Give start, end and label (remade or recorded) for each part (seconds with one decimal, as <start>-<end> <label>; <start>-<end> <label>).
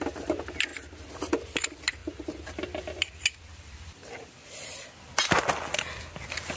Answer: 0.0-0.7 recorded; 0.7-1.6 remade; 1.6-3.5 recorded; 3.5-5.6 remade; 5.6-6.6 recorded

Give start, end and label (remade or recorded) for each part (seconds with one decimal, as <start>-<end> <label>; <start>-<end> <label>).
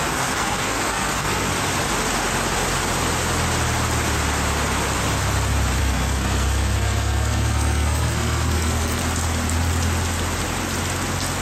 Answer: 0.0-1.5 remade; 1.5-5.8 recorded; 5.8-9.0 remade; 9.0-11.4 recorded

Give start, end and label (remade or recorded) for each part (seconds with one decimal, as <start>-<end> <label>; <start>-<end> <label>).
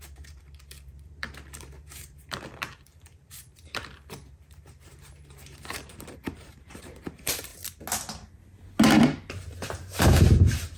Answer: 0.0-7.5 remade; 7.5-9.3 recorded; 9.3-10.8 remade